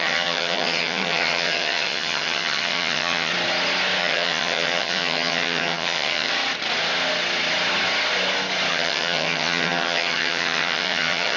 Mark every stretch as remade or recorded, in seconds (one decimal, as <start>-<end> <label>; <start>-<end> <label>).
0.0-3.3 remade; 3.3-4.0 recorded; 4.0-6.3 remade; 6.3-8.7 recorded; 8.7-11.4 remade